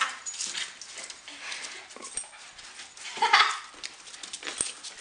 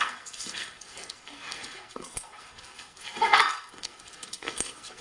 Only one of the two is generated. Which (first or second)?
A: second